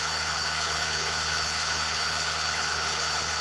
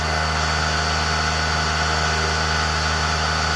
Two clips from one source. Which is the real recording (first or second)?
second